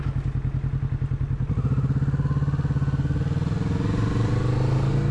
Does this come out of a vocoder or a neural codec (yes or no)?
no